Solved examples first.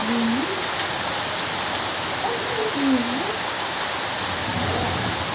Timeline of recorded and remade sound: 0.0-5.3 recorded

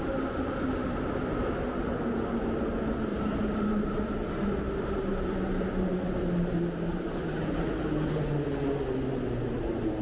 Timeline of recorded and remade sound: 0.0-3.1 recorded; 3.1-8.2 remade; 8.2-10.0 recorded

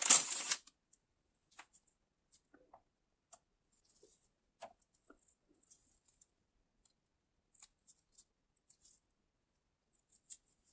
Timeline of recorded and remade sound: 0.0-10.7 recorded

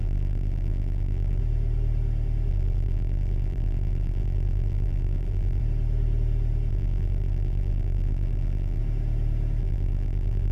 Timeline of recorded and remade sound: 0.0-1.4 remade; 1.4-2.5 recorded; 2.5-5.6 remade; 5.6-6.7 recorded; 6.7-8.8 remade; 8.8-9.6 recorded; 9.6-10.5 remade

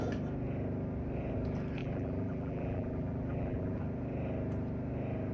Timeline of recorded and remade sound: 0.0-1.8 recorded; 1.8-3.8 remade; 3.8-5.3 recorded

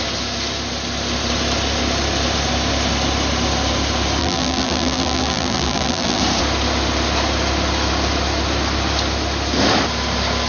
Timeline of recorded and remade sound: 0.0-4.2 recorded; 4.2-6.2 remade; 6.2-10.5 recorded